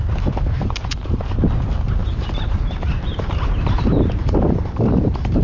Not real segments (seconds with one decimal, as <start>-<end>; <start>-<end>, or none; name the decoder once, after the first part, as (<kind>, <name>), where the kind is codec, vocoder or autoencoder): 2.0-5.4 (vocoder, BigVGAN v2)

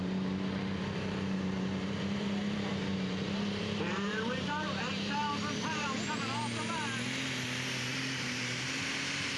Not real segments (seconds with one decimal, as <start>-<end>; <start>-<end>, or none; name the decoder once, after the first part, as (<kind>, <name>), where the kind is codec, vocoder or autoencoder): 0.0-5.2 (vocoder, BigVGAN v2); 7.9-9.4

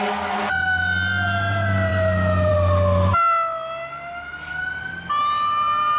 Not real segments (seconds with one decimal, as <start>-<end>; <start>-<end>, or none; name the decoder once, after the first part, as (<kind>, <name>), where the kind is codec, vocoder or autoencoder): none

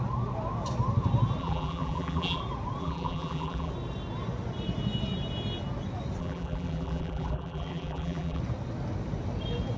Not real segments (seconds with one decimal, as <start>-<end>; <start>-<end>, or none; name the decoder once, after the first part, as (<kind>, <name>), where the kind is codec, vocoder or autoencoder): 1.4-2.4 (vocoder, BigVGAN v2); 2.8-3.7; 6.2-8.4

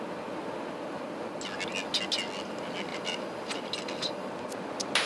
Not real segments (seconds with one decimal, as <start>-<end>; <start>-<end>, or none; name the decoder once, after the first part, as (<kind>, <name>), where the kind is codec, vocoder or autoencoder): 2.9-3.8 (vocoder, BigVGAN v2)

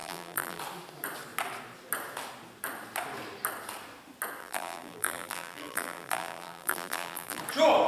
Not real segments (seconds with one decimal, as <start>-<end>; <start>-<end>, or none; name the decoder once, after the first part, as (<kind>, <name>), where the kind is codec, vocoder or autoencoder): 0.0-0.6 (vocoder, BigVGAN v2); 4.4-7.4